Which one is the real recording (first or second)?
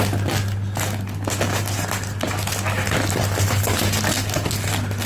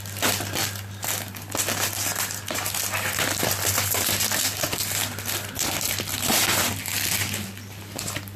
first